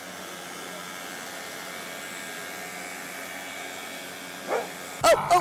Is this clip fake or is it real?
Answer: real